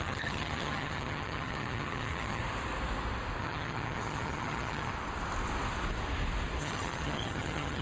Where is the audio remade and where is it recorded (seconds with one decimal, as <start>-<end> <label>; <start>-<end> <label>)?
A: 0.0-2.4 remade; 2.4-3.4 recorded; 3.4-4.9 remade; 4.9-6.6 recorded; 6.6-7.8 remade